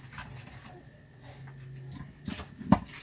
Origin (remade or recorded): recorded